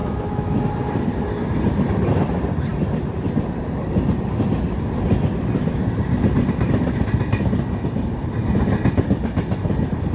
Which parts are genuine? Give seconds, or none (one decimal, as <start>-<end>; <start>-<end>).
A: 0.6-10.1